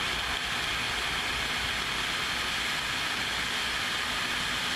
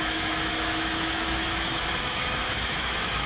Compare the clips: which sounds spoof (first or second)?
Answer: second